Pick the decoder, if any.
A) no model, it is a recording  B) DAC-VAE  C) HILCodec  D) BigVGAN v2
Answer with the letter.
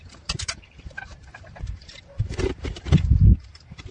D